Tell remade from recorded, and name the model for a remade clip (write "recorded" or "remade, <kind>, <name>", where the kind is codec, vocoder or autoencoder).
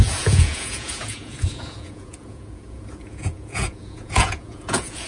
remade, vocoder, Vocos